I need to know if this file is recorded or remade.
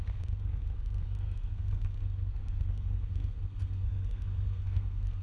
remade